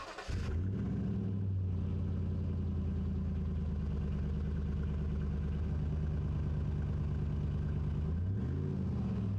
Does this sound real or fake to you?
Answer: real